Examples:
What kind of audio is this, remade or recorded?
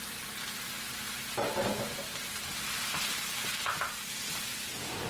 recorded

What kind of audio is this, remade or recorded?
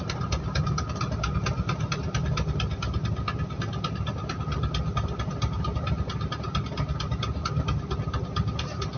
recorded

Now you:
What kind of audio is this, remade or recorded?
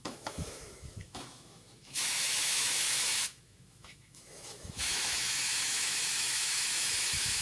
remade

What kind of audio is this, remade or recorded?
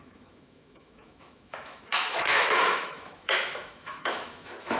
remade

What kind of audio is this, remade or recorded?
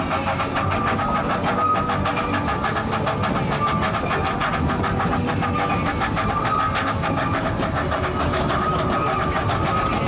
recorded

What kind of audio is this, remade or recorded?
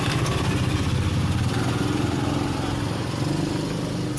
recorded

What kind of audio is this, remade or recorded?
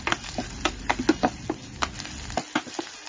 recorded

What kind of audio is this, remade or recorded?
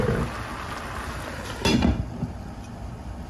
recorded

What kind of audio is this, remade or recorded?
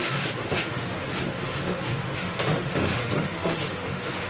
remade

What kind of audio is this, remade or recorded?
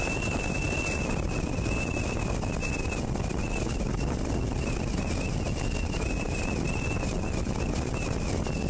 recorded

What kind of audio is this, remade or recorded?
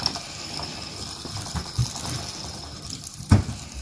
recorded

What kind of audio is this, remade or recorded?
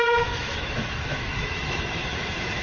remade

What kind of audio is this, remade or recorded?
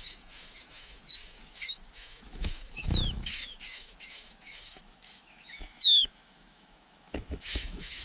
remade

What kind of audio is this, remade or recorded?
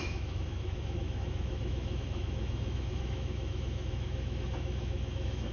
remade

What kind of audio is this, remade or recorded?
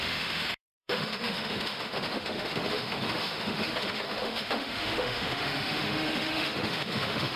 remade